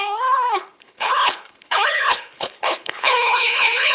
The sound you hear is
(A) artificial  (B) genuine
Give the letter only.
A